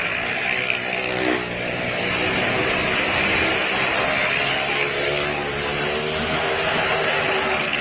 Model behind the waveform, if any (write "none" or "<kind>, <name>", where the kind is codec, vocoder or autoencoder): none